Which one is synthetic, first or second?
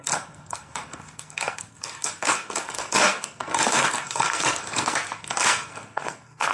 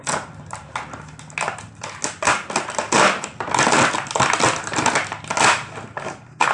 first